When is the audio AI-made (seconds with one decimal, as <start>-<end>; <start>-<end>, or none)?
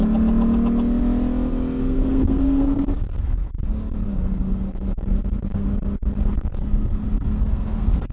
1.8-3.5; 4.1-5.7; 6.2-8.1